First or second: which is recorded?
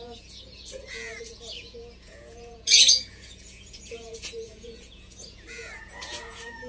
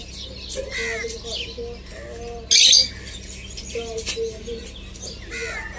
second